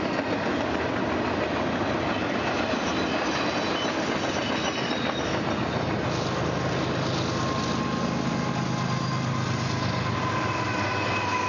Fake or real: real